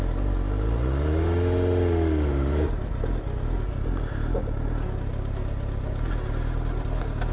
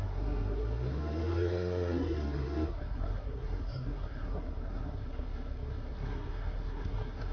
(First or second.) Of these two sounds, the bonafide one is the first